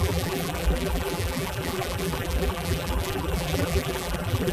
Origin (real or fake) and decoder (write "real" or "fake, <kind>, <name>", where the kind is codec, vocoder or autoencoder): fake, vocoder, BigVGAN v2